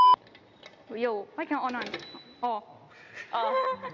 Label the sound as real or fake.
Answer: real